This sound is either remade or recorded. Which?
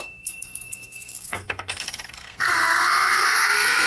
remade